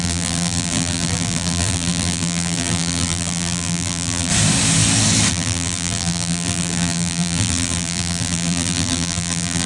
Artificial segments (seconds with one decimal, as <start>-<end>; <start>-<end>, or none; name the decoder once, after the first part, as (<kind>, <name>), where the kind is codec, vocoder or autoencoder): 0.0-4.3 (vocoder, BigVGAN v2); 5.3-9.7